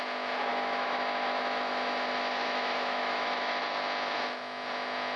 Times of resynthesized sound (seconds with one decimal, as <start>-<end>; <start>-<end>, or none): 0.5-3.6